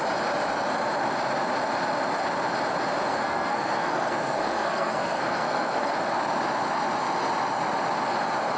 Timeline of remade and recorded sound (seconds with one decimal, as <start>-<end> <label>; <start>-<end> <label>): 0.0-3.1 recorded; 3.1-5.9 remade; 5.9-8.6 recorded